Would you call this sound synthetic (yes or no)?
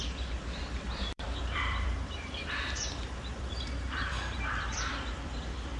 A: yes